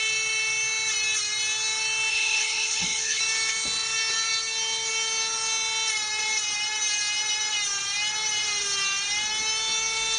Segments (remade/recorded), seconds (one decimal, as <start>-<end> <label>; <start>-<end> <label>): 0.0-2.1 recorded; 2.1-3.2 remade; 3.2-10.2 recorded